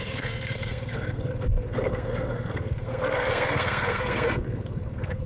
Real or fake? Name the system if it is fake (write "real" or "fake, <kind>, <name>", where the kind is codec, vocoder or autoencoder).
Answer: fake, codec, SNAC